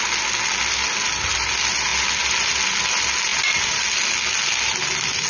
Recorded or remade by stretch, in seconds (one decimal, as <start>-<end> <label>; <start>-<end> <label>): 0.0-5.3 recorded

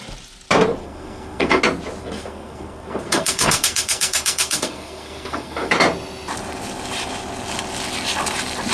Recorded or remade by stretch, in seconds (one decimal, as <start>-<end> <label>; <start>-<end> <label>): 0.0-0.8 recorded; 0.8-1.6 remade; 1.6-2.0 recorded; 2.0-5.7 remade; 5.7-8.7 recorded